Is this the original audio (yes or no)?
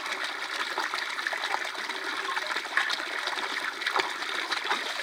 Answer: yes